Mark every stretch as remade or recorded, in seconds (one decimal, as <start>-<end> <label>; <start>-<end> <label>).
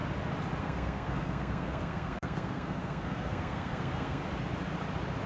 0.0-0.6 recorded; 0.6-4.2 remade; 4.2-5.3 recorded